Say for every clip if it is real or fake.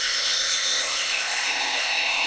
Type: fake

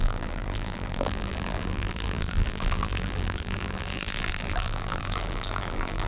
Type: fake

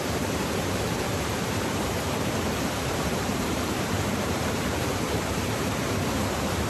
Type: fake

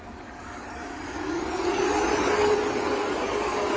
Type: fake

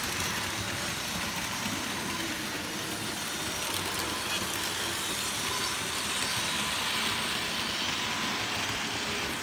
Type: real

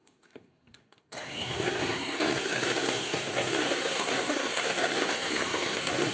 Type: fake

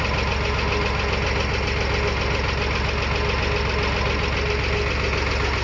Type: real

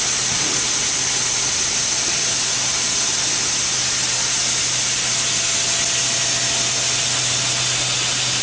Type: real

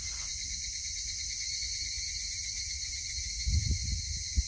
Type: real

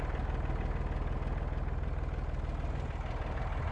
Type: real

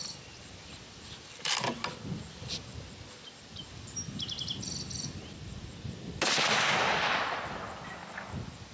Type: real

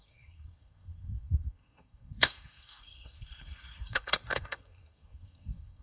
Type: fake